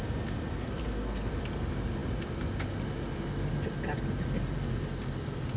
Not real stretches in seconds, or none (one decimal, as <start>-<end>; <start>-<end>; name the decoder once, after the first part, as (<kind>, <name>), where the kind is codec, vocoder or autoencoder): 0.5-1.3 (codec, SNAC)